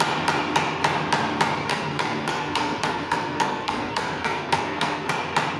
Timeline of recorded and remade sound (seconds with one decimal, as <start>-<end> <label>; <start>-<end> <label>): 0.0-1.7 recorded; 1.7-5.1 remade; 5.1-5.6 recorded